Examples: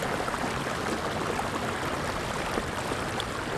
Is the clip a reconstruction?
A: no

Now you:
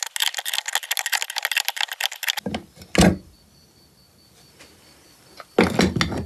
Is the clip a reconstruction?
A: no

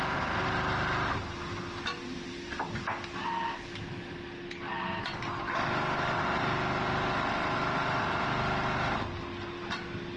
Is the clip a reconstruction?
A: no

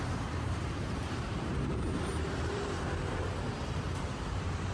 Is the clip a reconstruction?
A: yes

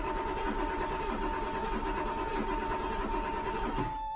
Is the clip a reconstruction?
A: no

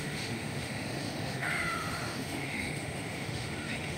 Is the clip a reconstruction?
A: yes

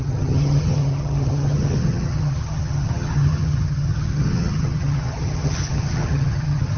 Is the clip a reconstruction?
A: yes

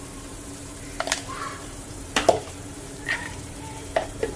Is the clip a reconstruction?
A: yes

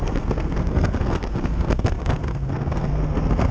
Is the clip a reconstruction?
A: yes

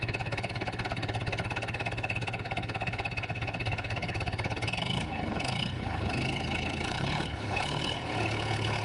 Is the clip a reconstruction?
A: yes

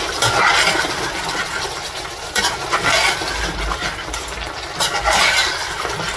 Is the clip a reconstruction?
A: no